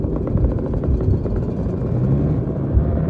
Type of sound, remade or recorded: recorded